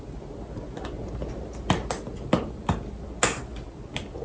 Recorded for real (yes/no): yes